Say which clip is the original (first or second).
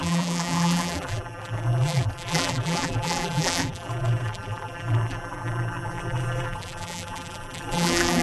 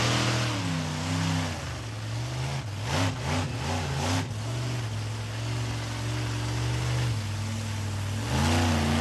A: second